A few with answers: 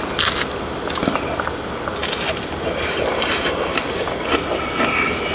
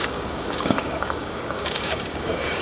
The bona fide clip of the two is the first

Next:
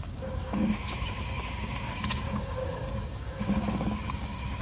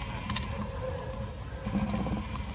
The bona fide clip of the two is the second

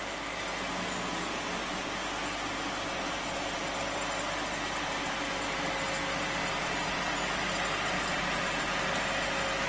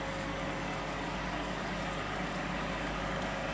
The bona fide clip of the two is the first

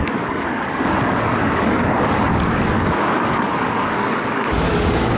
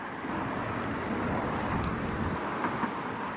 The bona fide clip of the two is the second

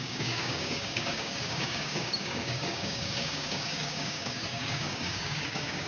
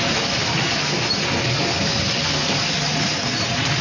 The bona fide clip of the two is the second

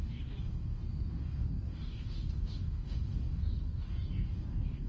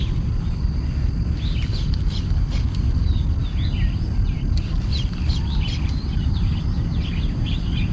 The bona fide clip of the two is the second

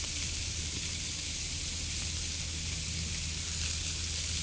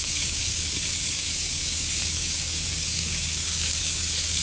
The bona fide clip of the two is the first